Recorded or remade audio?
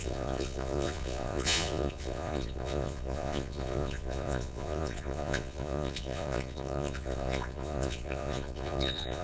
remade